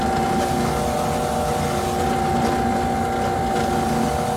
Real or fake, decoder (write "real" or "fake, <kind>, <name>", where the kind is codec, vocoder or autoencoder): real